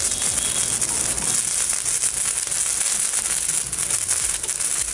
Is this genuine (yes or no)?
yes